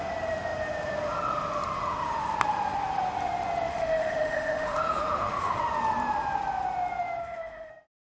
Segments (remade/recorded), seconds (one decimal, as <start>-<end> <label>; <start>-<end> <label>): 0.0-3.7 recorded; 3.7-5.6 remade; 5.6-7.2 recorded; 7.2-7.7 remade; 7.7-8.2 recorded